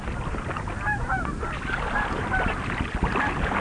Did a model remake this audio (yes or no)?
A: no